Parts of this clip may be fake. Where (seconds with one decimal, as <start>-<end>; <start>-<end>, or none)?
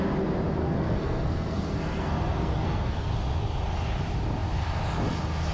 0.6-3.1